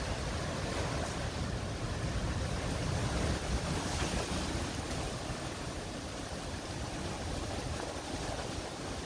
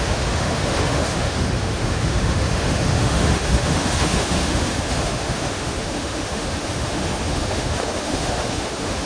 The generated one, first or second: second